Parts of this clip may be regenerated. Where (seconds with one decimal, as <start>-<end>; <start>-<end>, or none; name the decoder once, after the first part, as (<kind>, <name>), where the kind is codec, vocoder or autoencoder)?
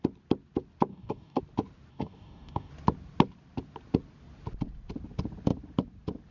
0.9-1.4 (codec, DAC); 1.9-2.7